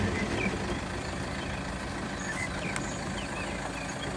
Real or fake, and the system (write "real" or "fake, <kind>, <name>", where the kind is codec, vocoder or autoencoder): real